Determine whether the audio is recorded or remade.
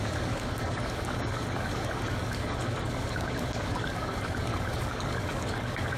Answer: remade